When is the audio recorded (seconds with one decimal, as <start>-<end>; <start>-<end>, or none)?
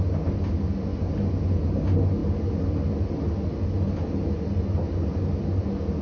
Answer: 0.0-6.0